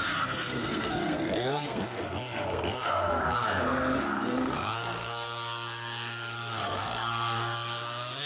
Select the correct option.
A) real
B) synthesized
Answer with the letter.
B